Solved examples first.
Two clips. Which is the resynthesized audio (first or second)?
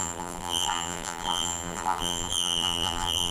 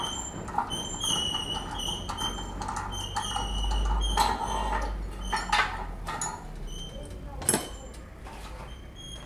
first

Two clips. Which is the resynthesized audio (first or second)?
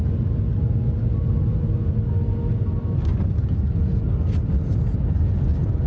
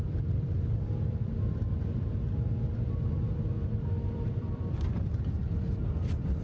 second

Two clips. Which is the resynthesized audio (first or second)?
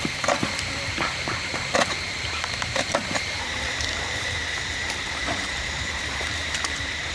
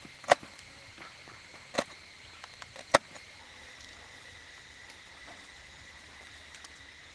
first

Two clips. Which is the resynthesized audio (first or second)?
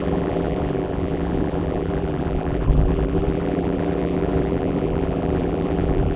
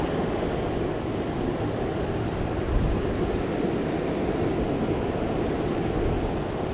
first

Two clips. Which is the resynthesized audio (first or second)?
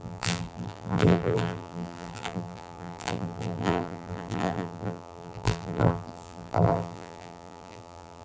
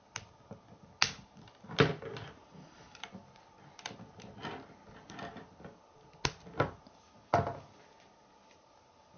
first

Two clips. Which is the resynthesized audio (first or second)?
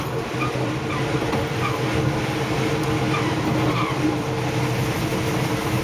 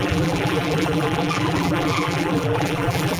second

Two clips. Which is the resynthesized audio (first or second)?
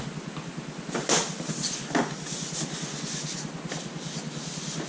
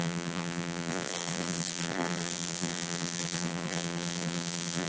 second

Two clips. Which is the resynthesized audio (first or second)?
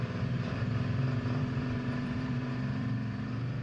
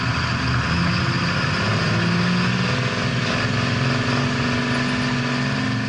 first